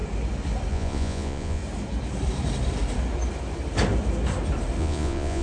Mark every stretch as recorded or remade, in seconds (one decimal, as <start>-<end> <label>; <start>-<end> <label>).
0.0-0.7 recorded; 0.7-1.6 remade; 1.6-4.8 recorded; 4.8-5.4 remade